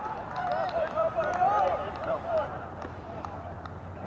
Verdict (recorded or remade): remade